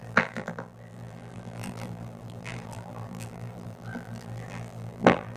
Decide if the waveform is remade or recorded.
remade